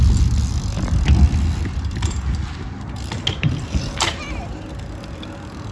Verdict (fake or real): real